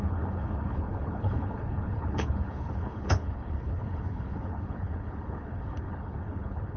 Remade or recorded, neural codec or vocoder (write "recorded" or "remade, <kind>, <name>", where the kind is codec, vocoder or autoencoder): remade, codec, HILCodec